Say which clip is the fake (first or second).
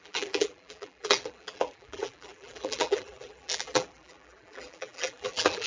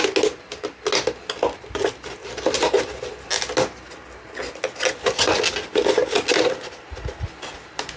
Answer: first